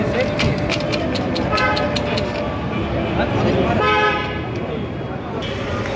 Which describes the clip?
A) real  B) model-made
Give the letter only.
A